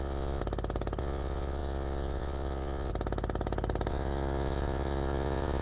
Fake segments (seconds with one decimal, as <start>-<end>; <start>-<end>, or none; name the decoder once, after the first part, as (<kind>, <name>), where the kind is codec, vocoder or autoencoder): 0.0-0.4 (vocoder, Vocos); 1.0-2.9; 3.9-5.6